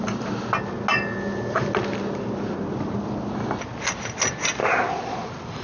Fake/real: real